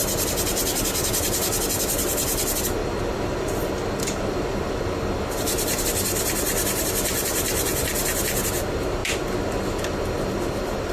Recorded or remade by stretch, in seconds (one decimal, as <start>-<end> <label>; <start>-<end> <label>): 0.0-10.9 recorded